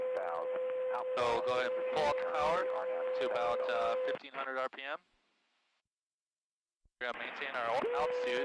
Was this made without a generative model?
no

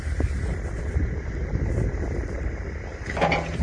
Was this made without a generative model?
yes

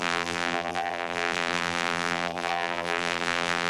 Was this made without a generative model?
no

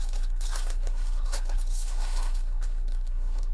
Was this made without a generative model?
no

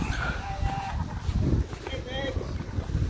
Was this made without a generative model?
yes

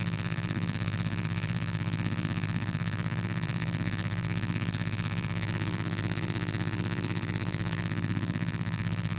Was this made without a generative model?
no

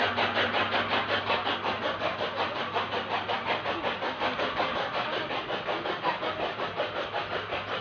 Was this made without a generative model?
yes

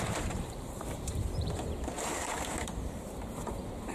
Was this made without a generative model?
no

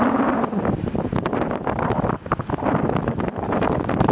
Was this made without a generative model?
yes